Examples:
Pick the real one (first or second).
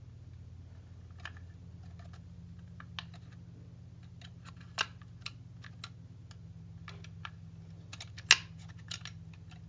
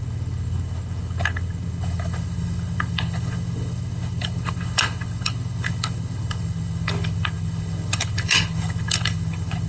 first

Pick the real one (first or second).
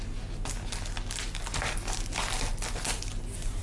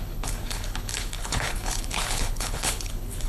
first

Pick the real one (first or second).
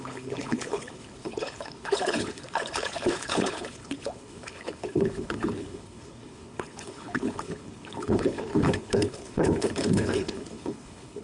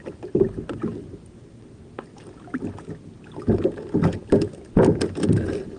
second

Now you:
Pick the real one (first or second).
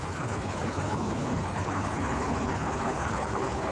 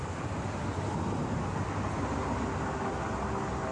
second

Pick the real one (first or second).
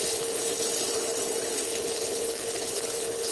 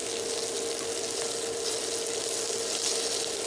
second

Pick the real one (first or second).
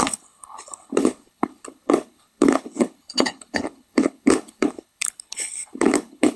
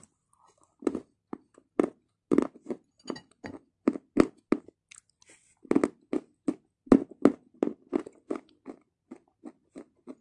second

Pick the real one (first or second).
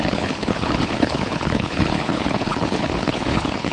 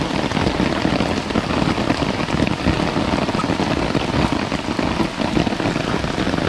second